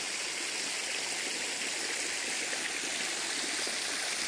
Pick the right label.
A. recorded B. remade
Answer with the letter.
A